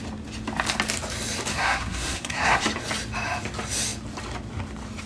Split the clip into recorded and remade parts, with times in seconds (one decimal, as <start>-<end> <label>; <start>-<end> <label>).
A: 0.0-1.5 recorded; 1.5-2.6 remade; 2.6-5.1 recorded